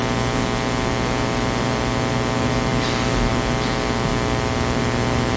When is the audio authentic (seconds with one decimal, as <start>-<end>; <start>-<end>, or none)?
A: 0.0-4.1; 4.8-5.4

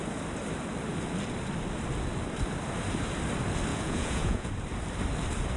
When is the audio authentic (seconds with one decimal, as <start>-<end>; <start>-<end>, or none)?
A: 0.0-3.7; 4.5-5.6

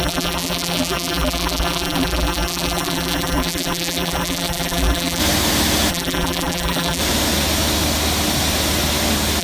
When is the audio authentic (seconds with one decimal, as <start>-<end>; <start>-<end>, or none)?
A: 5.2-5.9; 7.0-9.4